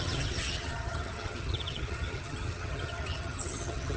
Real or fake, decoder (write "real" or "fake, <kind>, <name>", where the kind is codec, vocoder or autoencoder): fake, vocoder, HiFi-GAN